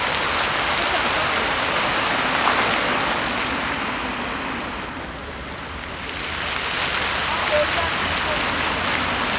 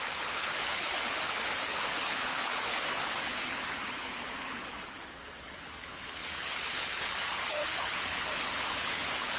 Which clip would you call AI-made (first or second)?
second